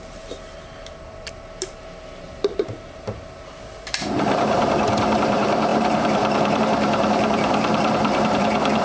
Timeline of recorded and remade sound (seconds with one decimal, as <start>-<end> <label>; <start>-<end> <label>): 0.0-8.8 remade

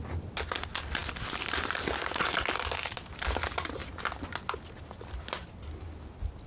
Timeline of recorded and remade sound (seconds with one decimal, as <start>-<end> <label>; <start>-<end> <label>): 0.0-1.0 recorded; 1.0-2.9 remade; 2.9-6.5 recorded